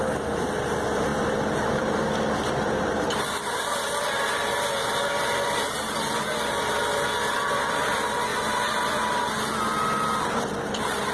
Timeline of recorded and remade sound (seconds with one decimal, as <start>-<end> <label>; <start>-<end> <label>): 0.0-11.1 recorded